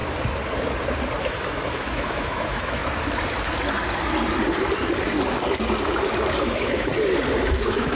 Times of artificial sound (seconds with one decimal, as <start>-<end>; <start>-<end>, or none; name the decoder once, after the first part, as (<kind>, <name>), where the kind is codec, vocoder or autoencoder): 1.2-2.8 (autoencoder, DAC-VAE); 6.4-6.9; 7.5-8.0